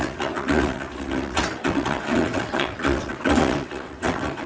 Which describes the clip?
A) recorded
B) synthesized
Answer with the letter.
B